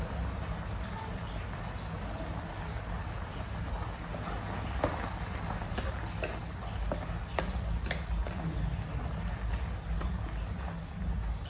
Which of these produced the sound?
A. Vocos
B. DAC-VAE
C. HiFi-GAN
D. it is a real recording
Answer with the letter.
D